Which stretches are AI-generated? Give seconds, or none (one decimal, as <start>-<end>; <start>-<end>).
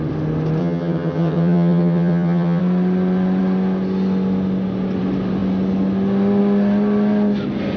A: 0.6-2.6